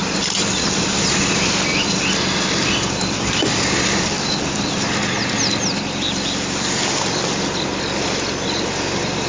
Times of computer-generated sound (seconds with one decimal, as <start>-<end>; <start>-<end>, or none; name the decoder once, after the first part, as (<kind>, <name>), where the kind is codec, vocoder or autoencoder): none